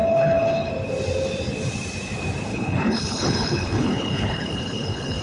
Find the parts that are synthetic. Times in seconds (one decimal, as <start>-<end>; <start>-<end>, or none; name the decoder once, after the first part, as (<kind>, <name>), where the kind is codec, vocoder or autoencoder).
0.0-0.7 (codec, HILCodec); 2.5-5.2